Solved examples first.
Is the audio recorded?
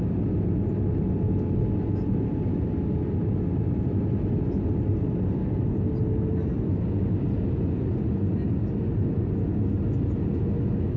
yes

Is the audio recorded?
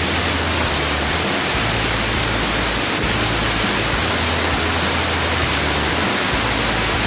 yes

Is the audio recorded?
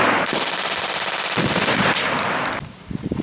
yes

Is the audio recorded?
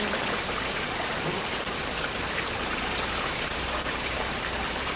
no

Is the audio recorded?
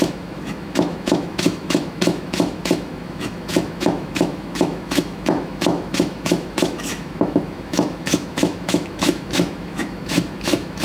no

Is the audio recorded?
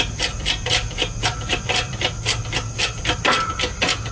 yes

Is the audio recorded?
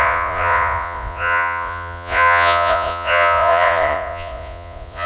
no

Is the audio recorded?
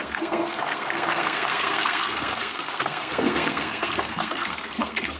no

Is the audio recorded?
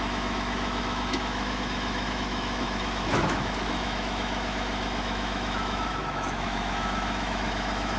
no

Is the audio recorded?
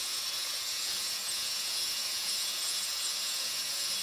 no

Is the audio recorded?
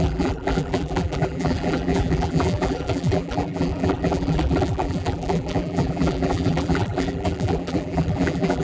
no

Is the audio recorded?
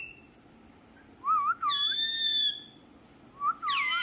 yes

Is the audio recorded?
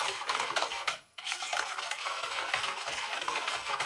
no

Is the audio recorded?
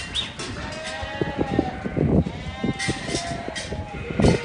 yes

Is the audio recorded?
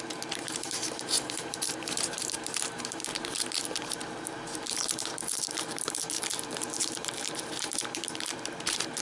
no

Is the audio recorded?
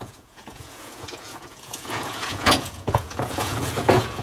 no